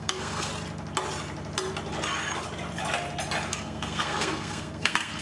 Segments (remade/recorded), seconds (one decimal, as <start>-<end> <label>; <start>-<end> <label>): 0.0-0.5 remade; 0.5-3.5 recorded; 3.5-5.2 remade